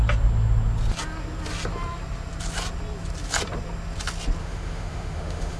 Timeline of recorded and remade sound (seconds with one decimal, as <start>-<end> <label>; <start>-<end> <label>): 0.0-4.4 recorded; 4.4-5.6 remade